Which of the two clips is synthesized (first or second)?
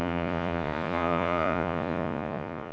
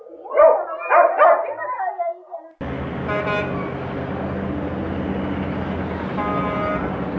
first